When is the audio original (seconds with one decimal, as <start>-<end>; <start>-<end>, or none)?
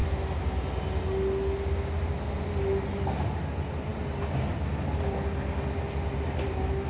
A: 0.0-6.9